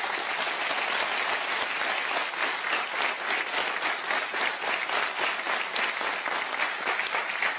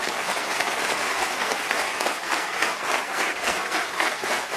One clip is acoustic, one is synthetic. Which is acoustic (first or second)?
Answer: first